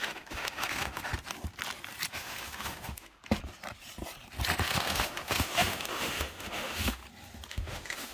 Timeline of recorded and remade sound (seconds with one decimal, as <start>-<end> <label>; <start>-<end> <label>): 0.0-1.1 remade; 1.1-2.1 recorded; 2.1-3.2 remade; 3.2-4.6 recorded; 4.6-7.0 remade; 7.0-7.5 recorded; 7.5-8.1 remade